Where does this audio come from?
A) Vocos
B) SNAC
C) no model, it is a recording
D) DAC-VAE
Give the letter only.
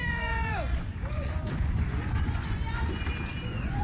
A